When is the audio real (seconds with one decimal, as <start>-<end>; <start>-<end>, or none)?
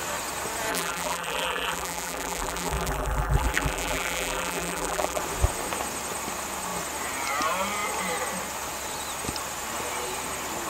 0.0-0.7; 5.2-10.7